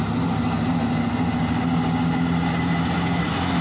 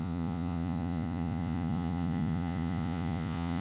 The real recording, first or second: first